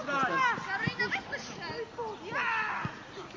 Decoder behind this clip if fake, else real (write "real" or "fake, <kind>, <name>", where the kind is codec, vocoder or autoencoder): real